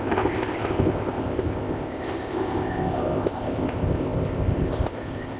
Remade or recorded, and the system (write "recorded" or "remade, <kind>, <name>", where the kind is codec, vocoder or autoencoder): remade, codec, ZipCodec